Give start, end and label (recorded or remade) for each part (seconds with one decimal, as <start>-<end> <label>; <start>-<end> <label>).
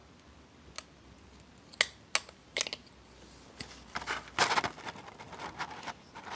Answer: 0.0-6.4 recorded